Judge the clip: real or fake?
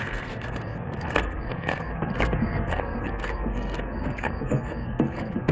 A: fake